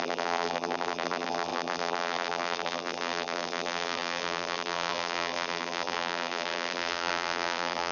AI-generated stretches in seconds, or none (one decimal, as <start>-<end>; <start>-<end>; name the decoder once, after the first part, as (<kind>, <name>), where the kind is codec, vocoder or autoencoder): 0.0-7.9 (vocoder, BigVGAN v2)